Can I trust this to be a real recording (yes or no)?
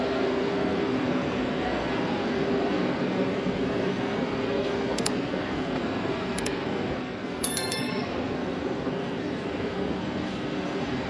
no